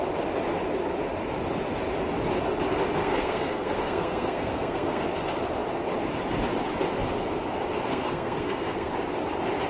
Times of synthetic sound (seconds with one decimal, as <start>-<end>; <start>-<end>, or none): 3.0-5.0; 7.9-8.9

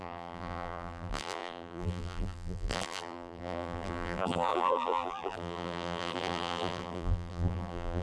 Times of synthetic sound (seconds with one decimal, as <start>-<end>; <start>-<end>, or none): 0.0-8.0

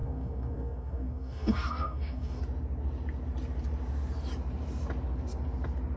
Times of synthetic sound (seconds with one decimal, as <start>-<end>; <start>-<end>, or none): 0.0-2.4

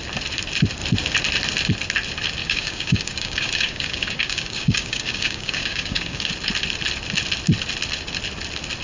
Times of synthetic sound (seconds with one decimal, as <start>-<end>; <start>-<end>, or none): 2.4-6.3